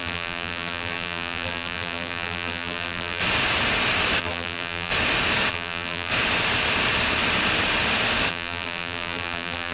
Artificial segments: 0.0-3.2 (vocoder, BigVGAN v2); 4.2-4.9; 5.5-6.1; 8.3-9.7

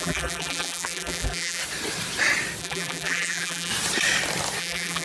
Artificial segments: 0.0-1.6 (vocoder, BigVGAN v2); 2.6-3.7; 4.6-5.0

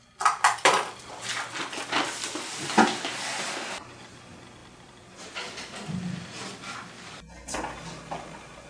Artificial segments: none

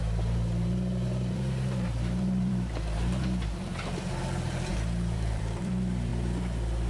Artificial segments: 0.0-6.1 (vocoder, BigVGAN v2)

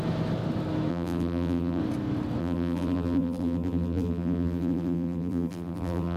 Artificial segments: 0.9-1.8 (vocoder, BigVGAN v2); 2.4-6.2